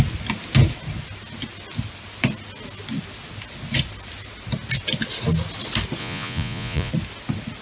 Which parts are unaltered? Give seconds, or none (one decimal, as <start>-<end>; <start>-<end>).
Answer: 0.0-6.0; 6.9-7.6